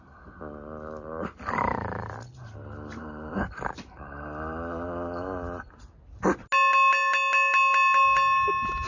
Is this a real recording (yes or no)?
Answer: yes